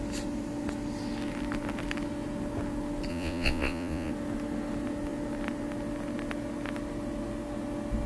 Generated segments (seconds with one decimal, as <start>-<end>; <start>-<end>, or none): 3.1-4.1